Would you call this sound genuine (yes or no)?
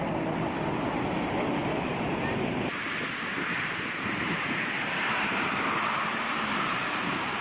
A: no